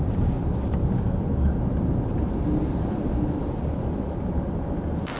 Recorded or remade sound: recorded